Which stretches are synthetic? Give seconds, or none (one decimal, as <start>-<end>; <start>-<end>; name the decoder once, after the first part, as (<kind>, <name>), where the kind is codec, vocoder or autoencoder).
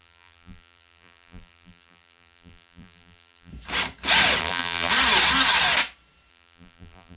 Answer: 0.0-3.5 (vocoder, BigVGAN v2); 4.4-4.9; 6.3-7.2